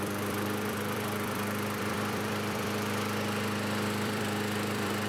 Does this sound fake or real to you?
fake